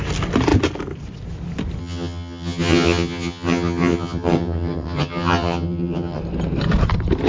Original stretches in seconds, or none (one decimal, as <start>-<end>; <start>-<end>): 0.0-1.8; 6.2-7.3